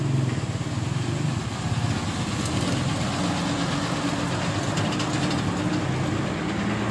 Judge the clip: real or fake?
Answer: real